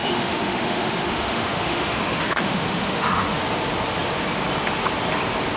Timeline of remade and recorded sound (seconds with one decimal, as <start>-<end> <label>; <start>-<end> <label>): 0.0-3.4 remade; 3.4-5.6 recorded